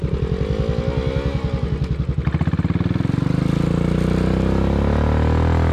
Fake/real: real